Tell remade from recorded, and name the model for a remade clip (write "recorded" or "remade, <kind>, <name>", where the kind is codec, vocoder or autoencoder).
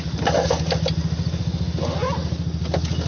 recorded